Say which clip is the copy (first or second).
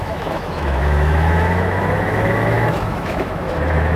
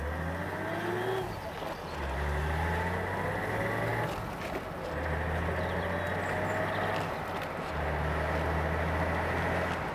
first